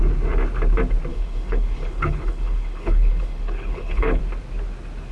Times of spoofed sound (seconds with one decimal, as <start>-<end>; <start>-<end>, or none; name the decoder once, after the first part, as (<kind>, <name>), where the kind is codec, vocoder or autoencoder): 1.1-4.2 (codec, HILCodec)